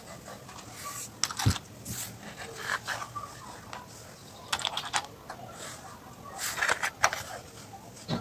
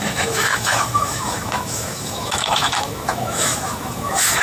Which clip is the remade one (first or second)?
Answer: second